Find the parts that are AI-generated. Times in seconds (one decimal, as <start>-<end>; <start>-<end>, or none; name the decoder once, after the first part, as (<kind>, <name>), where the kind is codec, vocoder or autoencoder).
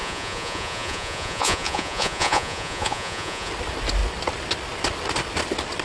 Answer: 0.0-3.5 (vocoder, Vocos)